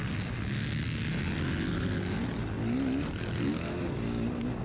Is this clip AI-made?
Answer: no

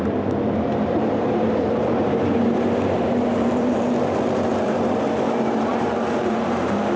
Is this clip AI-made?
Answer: yes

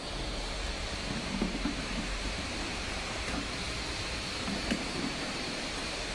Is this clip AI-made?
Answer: yes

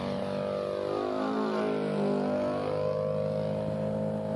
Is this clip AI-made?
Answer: no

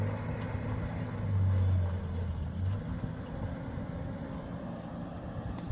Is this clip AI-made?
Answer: no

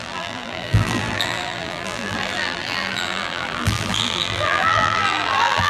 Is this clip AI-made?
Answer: yes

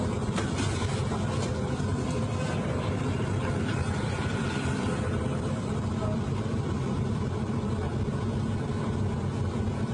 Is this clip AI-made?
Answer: yes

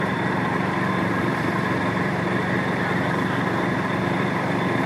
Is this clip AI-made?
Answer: yes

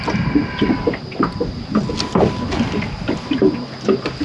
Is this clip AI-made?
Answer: no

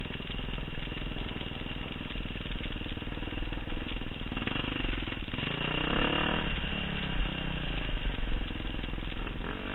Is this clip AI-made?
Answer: no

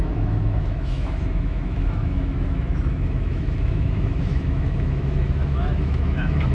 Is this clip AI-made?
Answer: yes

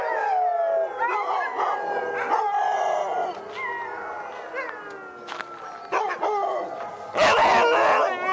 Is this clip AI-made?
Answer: no